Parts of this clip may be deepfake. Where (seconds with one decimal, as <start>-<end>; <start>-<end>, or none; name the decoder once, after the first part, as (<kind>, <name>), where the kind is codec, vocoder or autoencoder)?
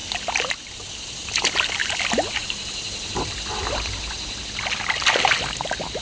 none